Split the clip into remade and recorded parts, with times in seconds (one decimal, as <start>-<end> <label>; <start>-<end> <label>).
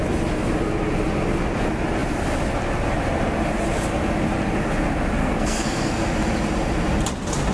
0.0-5.2 recorded; 5.2-6.0 remade; 6.0-7.5 recorded